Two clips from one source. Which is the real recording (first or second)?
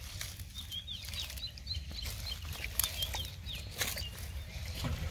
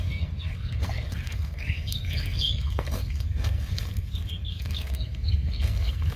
first